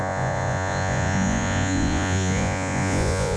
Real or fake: fake